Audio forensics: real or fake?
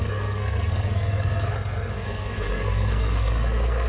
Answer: fake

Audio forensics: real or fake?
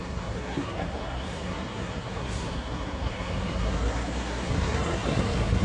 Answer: fake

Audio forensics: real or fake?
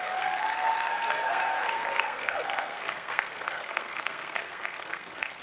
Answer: fake